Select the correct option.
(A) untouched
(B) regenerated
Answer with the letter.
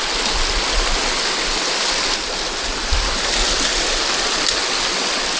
A